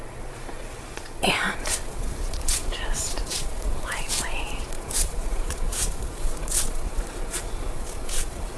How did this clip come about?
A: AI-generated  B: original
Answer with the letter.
A